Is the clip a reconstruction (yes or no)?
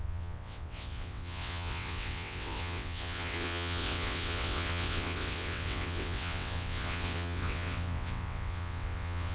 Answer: yes